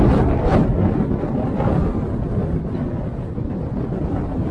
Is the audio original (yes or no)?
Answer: yes